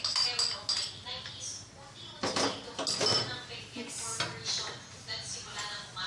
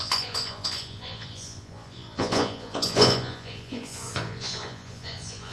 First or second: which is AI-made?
second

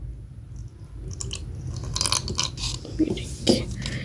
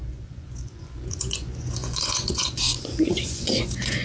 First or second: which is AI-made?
second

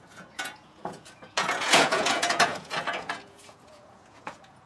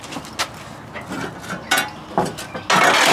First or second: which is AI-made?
first